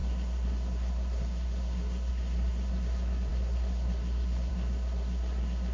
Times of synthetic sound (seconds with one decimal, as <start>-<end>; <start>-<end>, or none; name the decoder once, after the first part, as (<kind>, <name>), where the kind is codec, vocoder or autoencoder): 0.0-5.7 (codec, SNAC)